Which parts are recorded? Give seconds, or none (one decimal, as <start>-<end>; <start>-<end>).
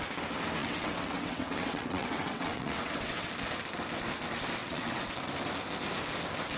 0.0-0.6; 3.3-4.6; 5.2-6.6